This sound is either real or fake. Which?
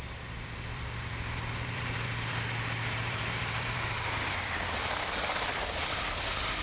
fake